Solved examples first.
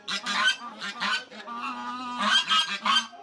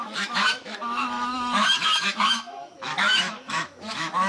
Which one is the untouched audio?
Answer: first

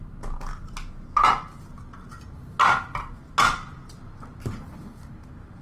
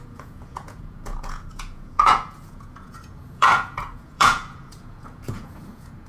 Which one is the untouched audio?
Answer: first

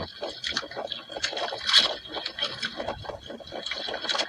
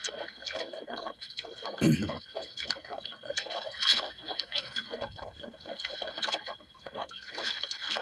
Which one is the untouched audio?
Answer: first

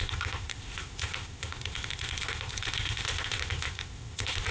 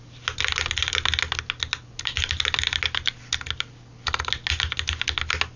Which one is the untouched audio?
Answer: second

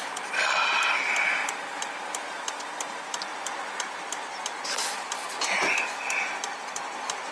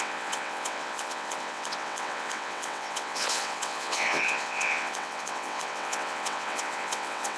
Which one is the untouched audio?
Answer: first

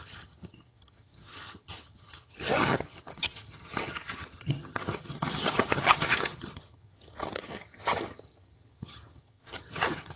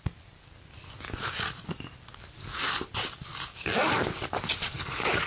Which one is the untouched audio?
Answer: second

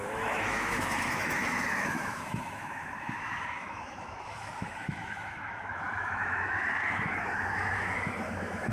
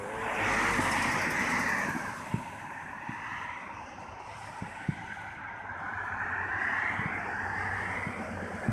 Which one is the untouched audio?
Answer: second